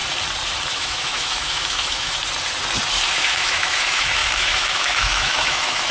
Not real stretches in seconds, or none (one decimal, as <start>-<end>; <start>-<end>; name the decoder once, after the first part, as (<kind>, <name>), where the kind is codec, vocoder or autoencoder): 0.7-2.2 (autoencoder, DAC-VAE); 3.1-5.9